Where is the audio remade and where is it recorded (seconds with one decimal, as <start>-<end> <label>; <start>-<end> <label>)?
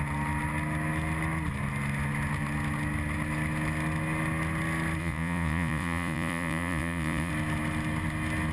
0.0-5.0 recorded; 5.0-7.3 remade; 7.3-8.5 recorded